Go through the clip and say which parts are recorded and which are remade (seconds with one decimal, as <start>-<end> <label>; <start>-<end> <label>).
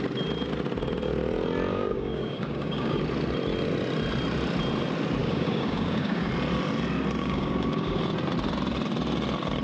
0.0-1.7 recorded; 1.7-3.0 remade; 3.0-5.2 recorded; 5.2-6.3 remade; 6.3-7.2 recorded; 7.2-8.0 remade; 8.0-9.6 recorded